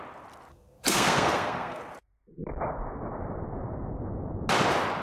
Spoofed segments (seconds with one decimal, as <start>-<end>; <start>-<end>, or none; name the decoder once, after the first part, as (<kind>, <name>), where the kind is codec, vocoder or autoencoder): 0.5-1.9 (codec, SNAC)